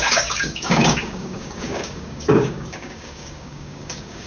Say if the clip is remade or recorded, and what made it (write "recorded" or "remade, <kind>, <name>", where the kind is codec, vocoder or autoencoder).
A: remade, codec, DAC